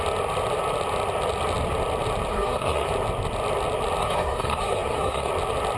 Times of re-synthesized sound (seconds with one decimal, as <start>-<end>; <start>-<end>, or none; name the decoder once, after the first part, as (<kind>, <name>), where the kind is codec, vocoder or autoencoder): 2.3-2.9 (codec, SNAC); 4.0-5.3